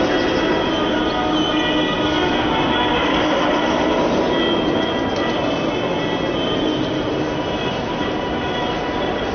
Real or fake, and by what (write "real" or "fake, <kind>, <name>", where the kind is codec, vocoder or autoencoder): real